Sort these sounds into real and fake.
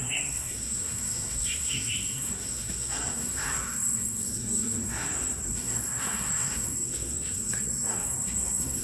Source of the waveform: fake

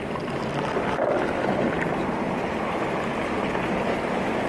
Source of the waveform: real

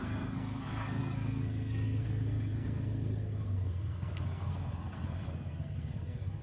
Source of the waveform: fake